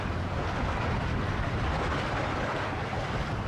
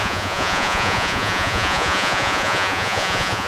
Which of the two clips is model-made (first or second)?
second